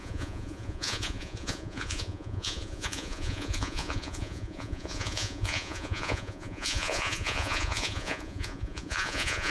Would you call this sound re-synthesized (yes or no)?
yes